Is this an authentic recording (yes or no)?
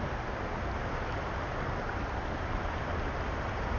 yes